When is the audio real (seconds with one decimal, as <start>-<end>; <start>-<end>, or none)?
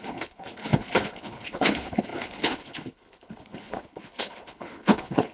none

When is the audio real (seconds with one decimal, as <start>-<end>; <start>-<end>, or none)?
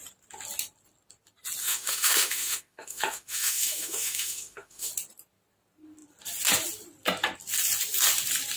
0.0-1.6; 4.9-8.6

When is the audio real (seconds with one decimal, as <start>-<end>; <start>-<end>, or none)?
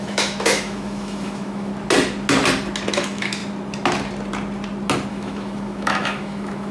1.7-2.9; 3.4-5.1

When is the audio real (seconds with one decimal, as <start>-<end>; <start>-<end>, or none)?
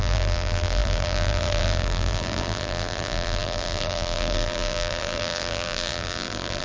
none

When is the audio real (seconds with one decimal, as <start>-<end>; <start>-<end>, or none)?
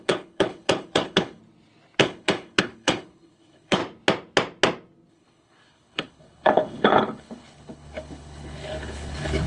1.4-2.0; 3.8-5.1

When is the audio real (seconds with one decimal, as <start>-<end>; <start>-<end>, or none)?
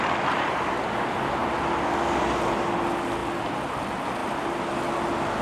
0.0-5.4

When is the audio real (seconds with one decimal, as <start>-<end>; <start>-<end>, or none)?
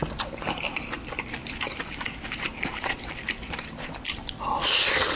0.0-1.4; 4.4-5.2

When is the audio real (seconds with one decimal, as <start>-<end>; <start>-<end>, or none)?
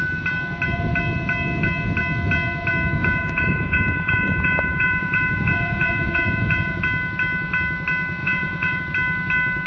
0.0-3.0; 6.8-8.2; 8.8-9.7